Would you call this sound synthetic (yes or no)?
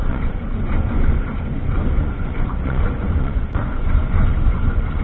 yes